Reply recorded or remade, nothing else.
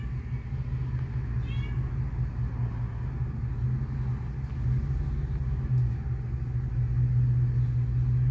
recorded